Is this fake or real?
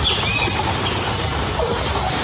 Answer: real